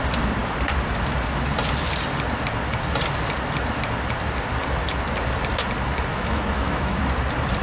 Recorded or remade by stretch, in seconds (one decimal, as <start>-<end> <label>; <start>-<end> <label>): 0.0-6.1 recorded; 6.1-7.0 remade; 7.0-7.6 recorded